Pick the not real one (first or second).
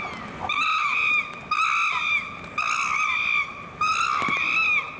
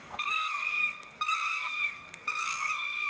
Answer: second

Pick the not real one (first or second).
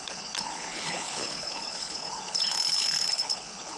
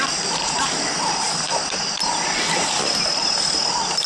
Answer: first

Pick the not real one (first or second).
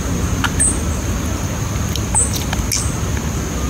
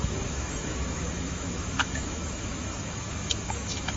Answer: second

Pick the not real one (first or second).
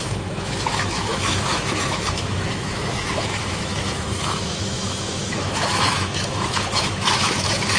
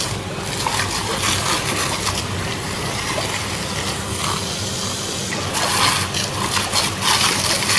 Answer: first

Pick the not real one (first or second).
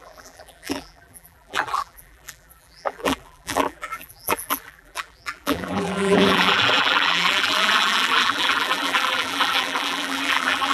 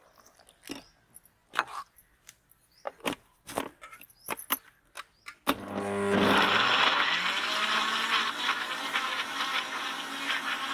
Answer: first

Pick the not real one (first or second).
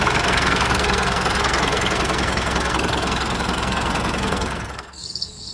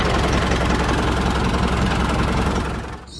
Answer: first